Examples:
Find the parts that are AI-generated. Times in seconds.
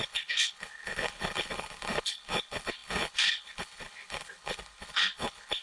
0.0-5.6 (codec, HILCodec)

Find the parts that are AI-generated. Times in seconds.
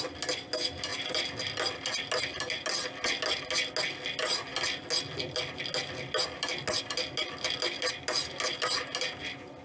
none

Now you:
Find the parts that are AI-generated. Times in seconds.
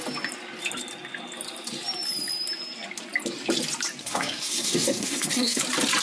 4.0-5.6 (codec, SNAC)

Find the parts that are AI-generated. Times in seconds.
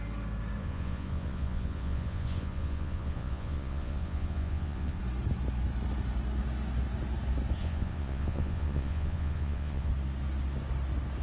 0.6-5.0 (vocoder, Vocos); 7.6-9.9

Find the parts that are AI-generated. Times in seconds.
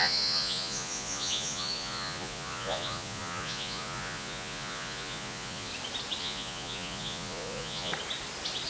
0.0-5.7 (vocoder, Vocos); 6.2-7.9